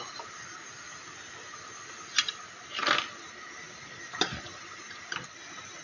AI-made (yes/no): no